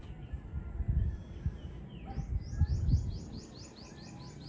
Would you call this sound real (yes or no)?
yes